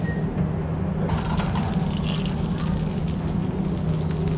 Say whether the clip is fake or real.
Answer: real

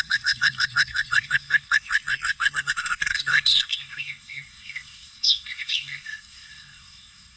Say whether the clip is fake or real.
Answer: fake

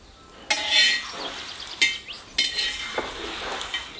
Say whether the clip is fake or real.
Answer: real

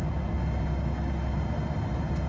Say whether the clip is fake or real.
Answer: real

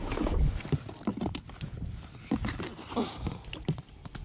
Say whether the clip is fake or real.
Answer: real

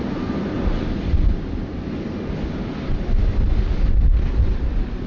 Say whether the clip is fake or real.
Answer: real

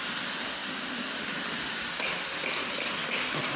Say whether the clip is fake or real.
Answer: real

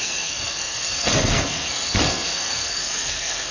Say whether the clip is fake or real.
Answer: fake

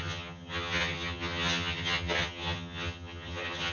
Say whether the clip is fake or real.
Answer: fake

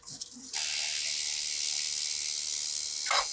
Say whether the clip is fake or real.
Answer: real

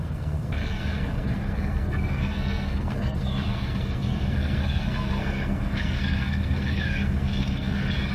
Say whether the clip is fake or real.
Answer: fake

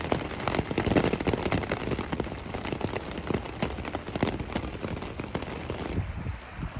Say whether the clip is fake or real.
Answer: real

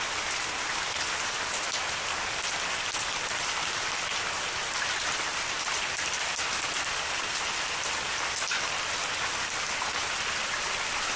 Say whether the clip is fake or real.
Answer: real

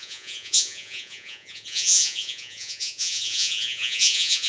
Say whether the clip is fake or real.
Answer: fake